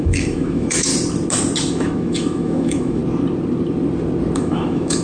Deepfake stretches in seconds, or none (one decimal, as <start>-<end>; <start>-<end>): 0.0-0.9; 1.7-3.0; 4.4-5.0